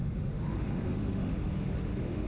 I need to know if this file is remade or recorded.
remade